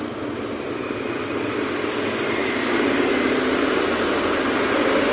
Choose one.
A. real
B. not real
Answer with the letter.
A